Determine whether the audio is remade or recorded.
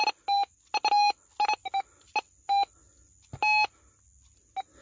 recorded